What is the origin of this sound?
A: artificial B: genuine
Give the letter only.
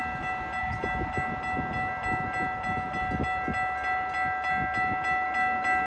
B